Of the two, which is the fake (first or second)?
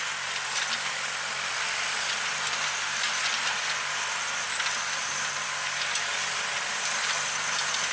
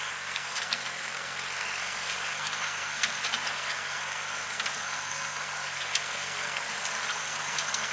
second